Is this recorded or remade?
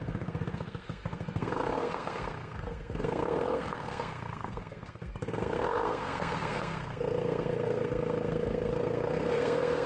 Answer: remade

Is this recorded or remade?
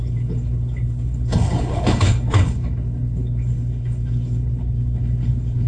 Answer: remade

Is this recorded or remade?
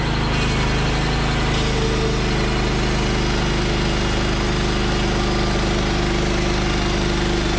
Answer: recorded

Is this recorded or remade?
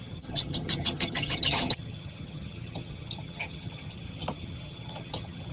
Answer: remade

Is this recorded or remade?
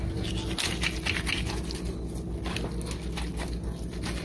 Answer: recorded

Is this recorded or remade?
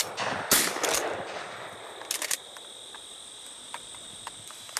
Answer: recorded